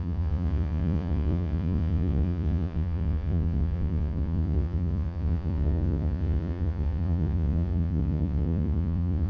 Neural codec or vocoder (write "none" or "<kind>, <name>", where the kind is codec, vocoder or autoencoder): vocoder, Vocos